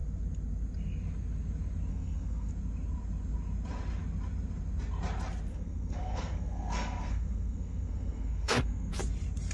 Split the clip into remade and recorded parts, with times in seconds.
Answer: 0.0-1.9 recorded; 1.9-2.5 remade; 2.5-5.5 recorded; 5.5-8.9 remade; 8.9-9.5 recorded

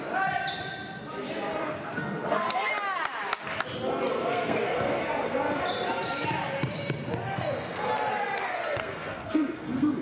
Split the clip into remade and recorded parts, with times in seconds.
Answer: 0.0-1.5 recorded; 1.5-2.7 remade; 2.7-4.1 recorded; 4.1-5.6 remade; 5.6-7.2 recorded; 7.2-7.9 remade; 7.9-8.4 recorded; 8.4-10.0 remade

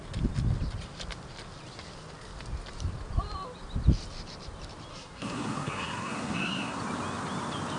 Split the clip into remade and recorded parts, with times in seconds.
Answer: 0.0-4.9 recorded; 4.9-6.8 remade; 6.8-7.8 recorded